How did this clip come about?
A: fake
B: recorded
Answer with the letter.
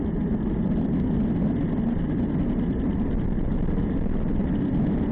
B